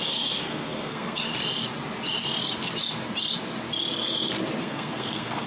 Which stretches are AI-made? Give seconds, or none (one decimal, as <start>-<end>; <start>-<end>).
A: 0.0-1.3; 4.6-5.5